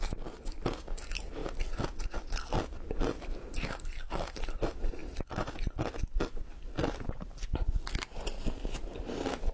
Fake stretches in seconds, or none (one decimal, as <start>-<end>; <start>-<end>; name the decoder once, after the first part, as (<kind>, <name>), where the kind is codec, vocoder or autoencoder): none